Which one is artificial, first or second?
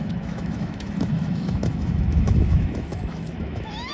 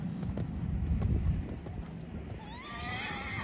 first